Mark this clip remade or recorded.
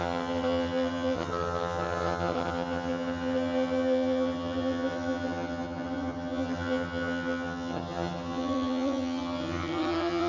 remade